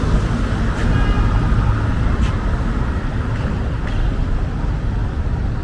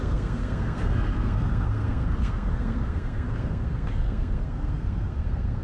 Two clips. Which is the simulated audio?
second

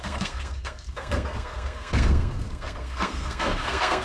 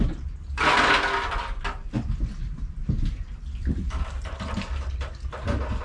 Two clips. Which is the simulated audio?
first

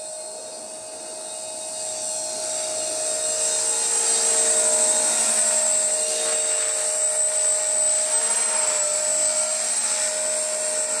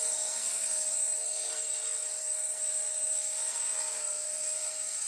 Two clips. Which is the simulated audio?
second